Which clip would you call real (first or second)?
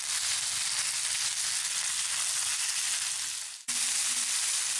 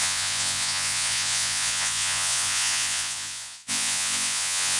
first